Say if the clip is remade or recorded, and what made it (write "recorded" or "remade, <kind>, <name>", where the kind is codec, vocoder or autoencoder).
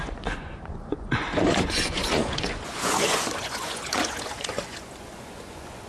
remade, vocoder, Vocos